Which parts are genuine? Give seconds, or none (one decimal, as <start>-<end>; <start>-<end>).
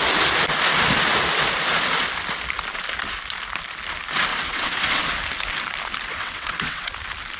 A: 0.0-4.3; 5.0-6.1; 6.9-7.4